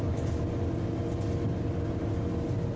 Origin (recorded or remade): recorded